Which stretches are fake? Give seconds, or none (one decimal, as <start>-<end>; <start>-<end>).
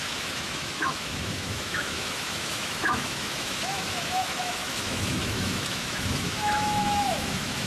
0.0-7.7